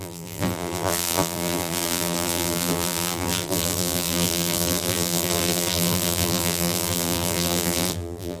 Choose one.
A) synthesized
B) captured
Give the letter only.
A